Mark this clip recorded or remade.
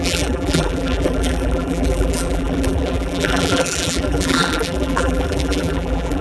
remade